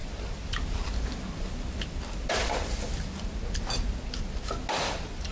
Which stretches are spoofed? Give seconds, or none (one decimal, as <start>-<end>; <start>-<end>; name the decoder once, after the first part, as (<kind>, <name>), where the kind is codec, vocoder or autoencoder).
none